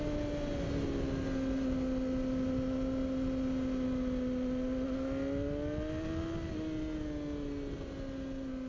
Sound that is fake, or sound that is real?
real